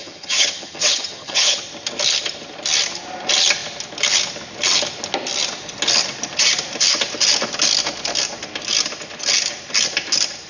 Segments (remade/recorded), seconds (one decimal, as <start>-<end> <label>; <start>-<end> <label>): 0.0-1.6 remade; 1.6-10.5 recorded

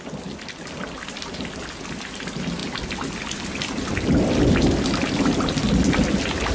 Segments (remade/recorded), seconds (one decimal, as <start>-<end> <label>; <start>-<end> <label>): 0.0-6.5 recorded

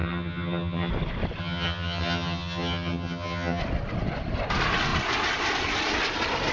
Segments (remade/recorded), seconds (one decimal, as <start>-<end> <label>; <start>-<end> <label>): 0.0-0.9 remade; 0.9-1.4 recorded; 1.4-3.6 remade; 3.6-6.5 recorded

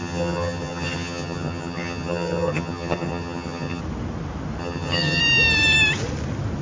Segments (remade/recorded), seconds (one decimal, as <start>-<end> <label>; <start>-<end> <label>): 0.0-3.8 remade; 3.8-4.6 recorded; 4.6-5.2 remade; 5.2-6.6 recorded

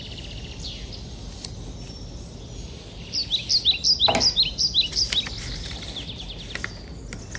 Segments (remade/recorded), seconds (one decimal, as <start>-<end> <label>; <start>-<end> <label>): 0.0-7.4 recorded

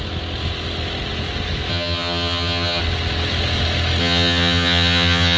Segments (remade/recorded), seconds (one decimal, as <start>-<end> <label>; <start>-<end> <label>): 0.0-1.7 recorded; 1.7-2.8 remade; 2.8-4.0 recorded; 4.0-5.4 remade

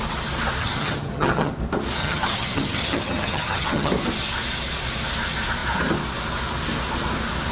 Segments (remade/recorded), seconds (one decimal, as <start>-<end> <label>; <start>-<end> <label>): 0.0-0.6 recorded; 0.6-1.5 remade; 1.5-2.0 recorded; 2.0-3.9 remade; 3.9-7.5 recorded